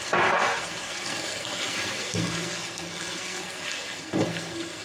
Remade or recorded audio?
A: remade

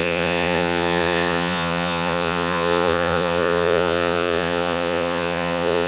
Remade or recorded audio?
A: remade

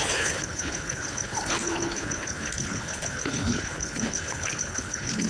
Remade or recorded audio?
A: remade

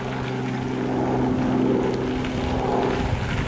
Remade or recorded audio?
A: recorded